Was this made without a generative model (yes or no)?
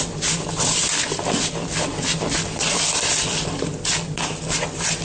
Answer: yes